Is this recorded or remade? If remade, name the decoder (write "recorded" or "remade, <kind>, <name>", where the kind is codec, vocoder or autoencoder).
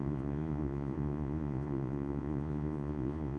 remade, vocoder, Vocos